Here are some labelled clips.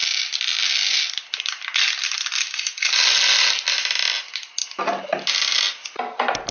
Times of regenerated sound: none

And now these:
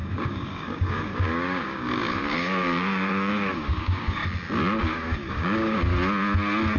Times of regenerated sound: 0.0-4.2 (codec, DAC); 4.8-5.9

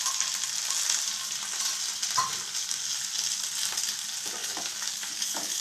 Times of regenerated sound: 4.4-5.6 (codec, DAC)

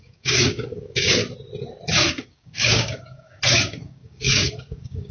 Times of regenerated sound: 0.0-1.2 (codec, DAC); 1.9-5.1

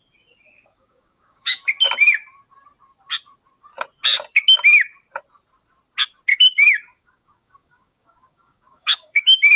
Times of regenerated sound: 0.5-1.6 (codec, DAC); 6.3-9.6

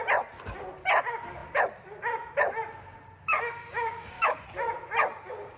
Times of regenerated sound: 3.3-4.4 (codec, DAC)

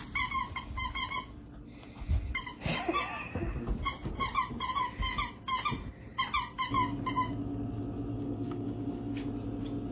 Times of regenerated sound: 8.1-9.3 (codec, DAC)